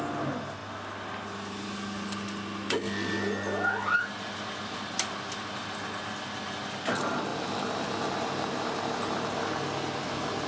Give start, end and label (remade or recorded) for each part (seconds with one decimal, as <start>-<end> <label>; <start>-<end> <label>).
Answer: 0.0-10.5 recorded